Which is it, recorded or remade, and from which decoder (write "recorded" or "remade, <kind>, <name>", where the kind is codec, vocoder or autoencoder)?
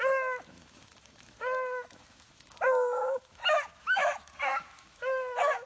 remade, autoencoder, DAC-VAE